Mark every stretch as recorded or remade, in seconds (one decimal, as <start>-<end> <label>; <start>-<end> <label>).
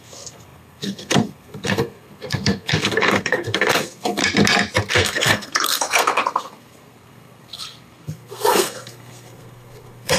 0.0-4.2 remade; 4.2-4.9 recorded; 4.9-10.2 remade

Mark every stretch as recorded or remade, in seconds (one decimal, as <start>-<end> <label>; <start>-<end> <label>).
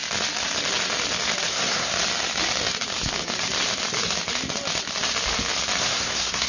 0.0-1.5 recorded; 1.5-1.9 remade; 1.9-5.8 recorded; 5.8-6.5 remade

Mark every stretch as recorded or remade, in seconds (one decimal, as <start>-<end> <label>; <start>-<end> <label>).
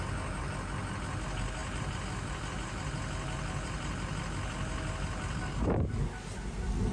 0.0-6.9 recorded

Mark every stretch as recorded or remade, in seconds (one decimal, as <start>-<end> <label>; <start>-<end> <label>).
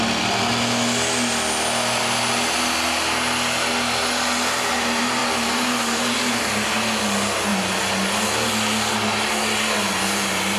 0.0-10.6 recorded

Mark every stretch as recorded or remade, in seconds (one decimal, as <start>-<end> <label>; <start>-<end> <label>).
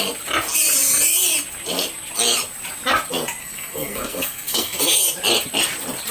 0.0-3.4 recorded; 3.4-5.0 remade; 5.0-6.1 recorded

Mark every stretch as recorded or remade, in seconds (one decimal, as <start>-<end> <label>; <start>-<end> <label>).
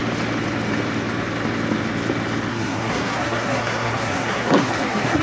0.0-2.5 recorded; 2.5-5.2 remade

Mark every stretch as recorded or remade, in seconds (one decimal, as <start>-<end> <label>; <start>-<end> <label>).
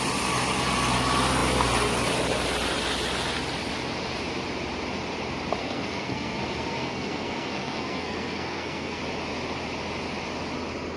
0.0-5.6 recorded; 5.6-9.0 remade; 9.0-11.0 recorded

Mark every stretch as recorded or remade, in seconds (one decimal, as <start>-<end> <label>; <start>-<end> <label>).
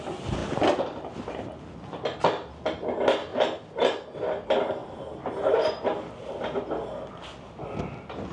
0.0-8.3 recorded